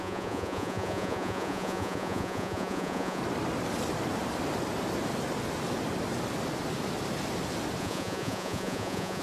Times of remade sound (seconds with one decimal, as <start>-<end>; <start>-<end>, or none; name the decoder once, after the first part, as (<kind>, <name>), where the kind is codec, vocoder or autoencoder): 0.0-3.2 (vocoder, Vocos); 7.8-9.2